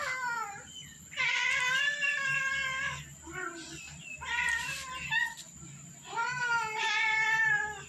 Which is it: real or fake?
real